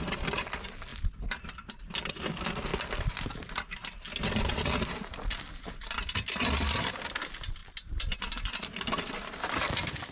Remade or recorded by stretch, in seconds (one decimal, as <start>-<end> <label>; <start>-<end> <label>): 0.0-10.1 recorded

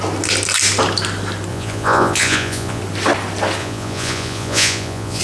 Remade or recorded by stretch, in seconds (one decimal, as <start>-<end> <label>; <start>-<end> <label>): 0.0-1.5 recorded; 1.5-2.8 remade; 2.8-3.6 recorded; 3.6-5.2 remade